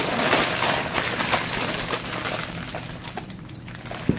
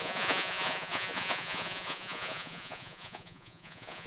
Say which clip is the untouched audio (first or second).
first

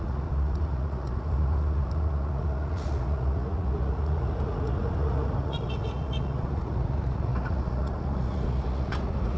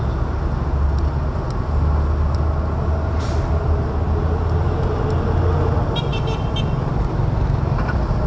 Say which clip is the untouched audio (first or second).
second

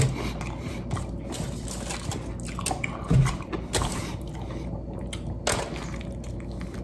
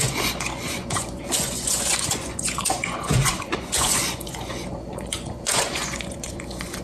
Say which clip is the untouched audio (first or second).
first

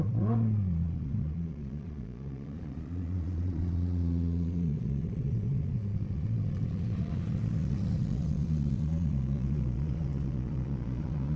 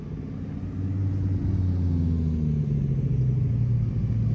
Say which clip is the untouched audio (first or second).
second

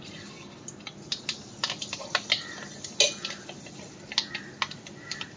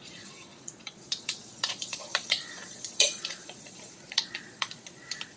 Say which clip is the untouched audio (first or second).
first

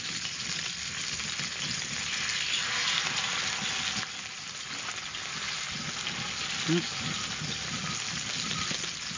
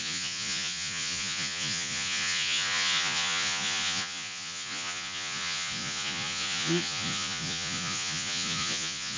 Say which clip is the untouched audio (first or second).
first